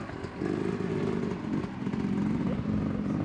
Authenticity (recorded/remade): recorded